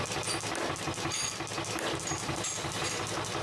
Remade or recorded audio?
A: recorded